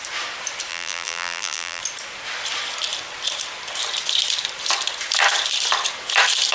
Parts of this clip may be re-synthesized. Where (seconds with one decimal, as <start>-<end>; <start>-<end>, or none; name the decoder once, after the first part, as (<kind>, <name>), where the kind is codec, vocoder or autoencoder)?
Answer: 0.7-1.8 (vocoder, BigVGAN v2)